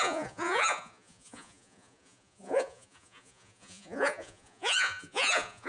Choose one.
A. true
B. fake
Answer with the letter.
B